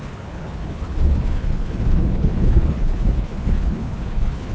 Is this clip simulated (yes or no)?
yes